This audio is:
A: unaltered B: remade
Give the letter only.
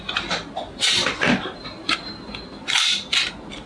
A